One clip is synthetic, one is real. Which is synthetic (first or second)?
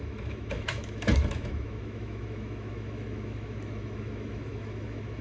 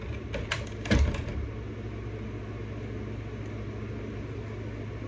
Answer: first